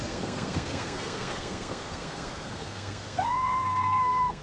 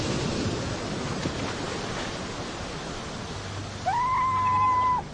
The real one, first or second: second